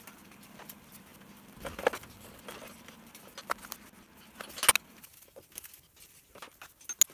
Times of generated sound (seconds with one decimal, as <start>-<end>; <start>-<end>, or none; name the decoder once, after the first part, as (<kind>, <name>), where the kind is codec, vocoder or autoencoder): none